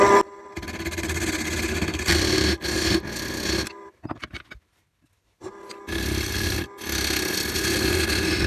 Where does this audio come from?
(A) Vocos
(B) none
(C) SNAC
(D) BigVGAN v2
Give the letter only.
B